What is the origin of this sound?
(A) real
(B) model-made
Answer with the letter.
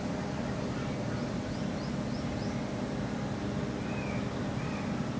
A